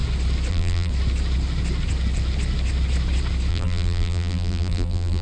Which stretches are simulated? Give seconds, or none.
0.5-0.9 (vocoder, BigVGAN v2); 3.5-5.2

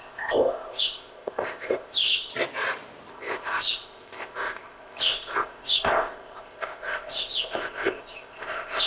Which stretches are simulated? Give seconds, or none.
0.0-2.3 (codec, ZipCodec); 3.1-8.9